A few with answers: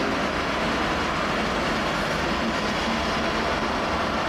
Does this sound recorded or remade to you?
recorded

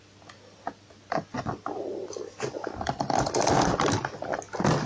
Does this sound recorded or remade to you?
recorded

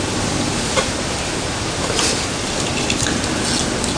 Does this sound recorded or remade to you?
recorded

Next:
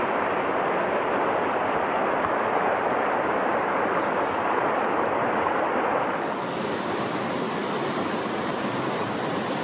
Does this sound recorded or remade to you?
recorded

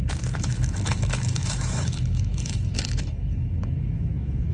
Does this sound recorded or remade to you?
remade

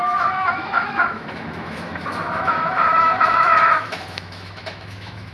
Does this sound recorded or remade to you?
remade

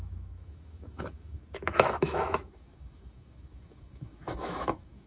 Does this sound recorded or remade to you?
remade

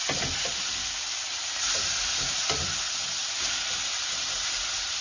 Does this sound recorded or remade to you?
recorded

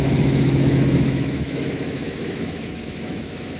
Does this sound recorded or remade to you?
remade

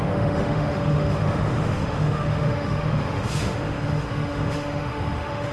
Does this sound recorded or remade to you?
remade